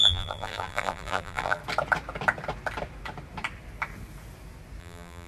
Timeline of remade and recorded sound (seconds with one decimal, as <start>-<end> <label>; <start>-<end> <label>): 0.0-1.6 remade; 1.6-4.8 recorded; 4.8-5.3 remade